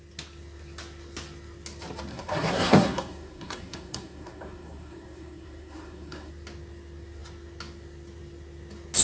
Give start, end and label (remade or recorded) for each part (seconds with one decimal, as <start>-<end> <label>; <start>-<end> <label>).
0.0-2.1 recorded; 2.1-6.3 remade; 6.3-9.0 recorded